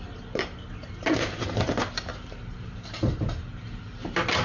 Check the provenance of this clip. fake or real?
real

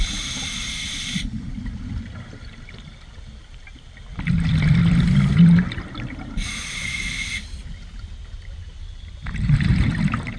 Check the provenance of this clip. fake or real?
real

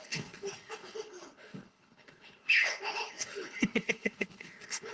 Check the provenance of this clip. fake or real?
fake